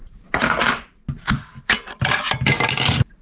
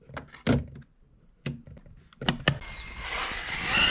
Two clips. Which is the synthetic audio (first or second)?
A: first